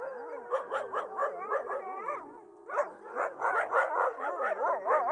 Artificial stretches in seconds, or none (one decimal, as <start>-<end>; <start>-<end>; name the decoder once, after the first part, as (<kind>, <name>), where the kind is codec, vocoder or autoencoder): 1.2-4.3 (vocoder, Vocos)